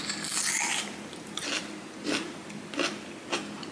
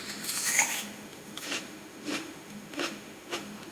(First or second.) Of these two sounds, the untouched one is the first